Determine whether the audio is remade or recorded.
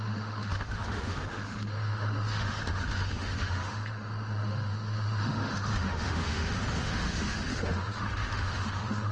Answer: remade